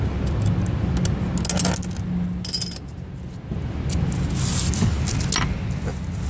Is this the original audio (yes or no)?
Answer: yes